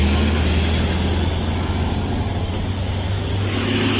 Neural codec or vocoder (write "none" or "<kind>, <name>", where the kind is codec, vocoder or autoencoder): none